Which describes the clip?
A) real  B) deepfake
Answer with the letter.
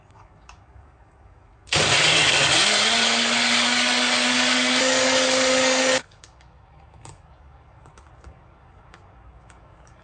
B